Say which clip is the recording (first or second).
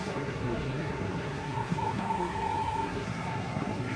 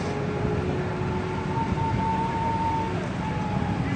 second